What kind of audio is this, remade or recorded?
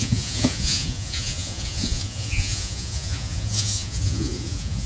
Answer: remade